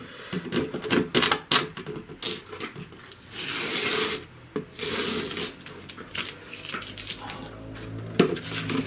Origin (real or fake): real